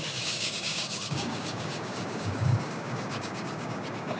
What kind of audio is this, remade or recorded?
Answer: remade